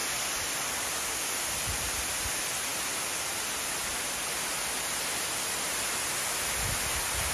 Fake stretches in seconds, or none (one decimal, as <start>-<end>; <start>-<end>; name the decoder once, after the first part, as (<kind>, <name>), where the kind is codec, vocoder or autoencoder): none